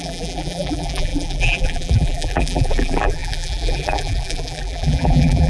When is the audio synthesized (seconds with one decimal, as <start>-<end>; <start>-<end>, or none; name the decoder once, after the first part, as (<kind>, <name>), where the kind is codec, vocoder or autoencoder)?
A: 0.0-5.5 (vocoder, BigVGAN v2)